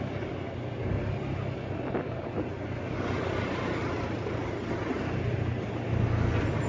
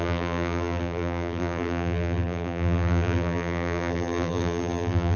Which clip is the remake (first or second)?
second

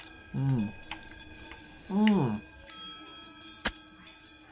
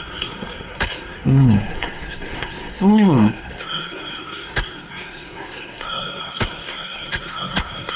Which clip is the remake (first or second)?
second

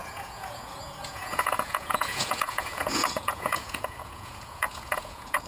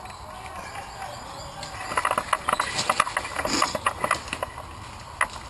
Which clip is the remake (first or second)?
first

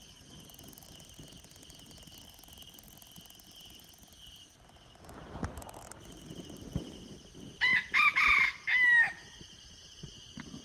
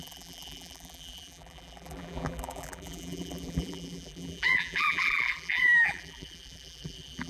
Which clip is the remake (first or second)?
second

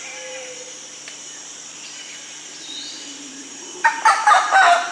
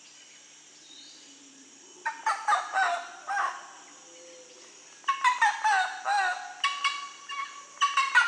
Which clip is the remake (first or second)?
first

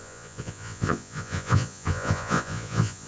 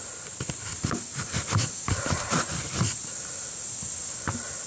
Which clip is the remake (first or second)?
first